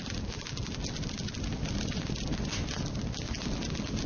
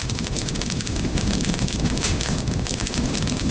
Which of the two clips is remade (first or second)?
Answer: second